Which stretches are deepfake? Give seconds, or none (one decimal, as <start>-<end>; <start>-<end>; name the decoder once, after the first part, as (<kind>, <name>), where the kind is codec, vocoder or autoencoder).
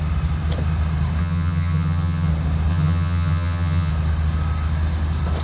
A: 1.2-2.3 (vocoder, HiFi-GAN); 2.7-3.9